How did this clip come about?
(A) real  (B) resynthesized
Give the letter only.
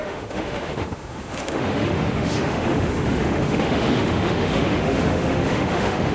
B